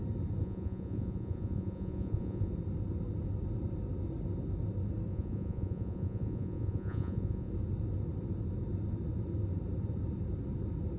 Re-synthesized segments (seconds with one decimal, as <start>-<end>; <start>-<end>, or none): 0.4-2.5; 5.1-7.5